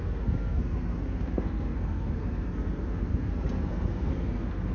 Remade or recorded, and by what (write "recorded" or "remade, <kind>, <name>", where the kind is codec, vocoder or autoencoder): remade, codec, SNAC